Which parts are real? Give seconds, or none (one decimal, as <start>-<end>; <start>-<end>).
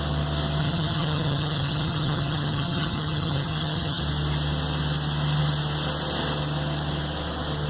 0.0-0.6; 4.0-7.7